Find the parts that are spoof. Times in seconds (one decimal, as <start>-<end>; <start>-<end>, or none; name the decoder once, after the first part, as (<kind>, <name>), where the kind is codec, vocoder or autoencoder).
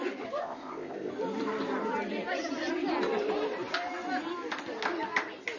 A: 0.4-1.1 (codec, ZipCodec)